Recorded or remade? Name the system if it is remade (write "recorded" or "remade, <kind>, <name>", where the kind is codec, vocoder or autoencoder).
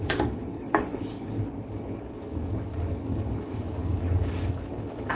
remade, codec, DAC